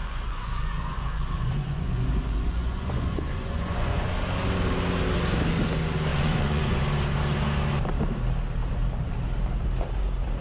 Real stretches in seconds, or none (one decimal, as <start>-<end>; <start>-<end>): 4.1-6.1; 6.8-10.4